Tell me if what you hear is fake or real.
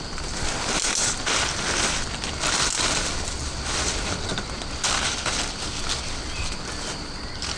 real